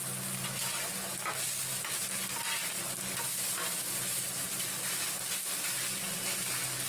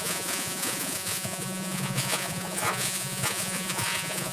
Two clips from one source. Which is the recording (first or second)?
first